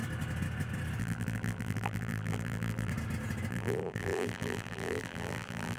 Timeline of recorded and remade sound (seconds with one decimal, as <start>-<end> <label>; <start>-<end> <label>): 0.0-1.0 recorded; 1.0-2.9 remade; 2.9-3.5 recorded; 3.5-5.8 remade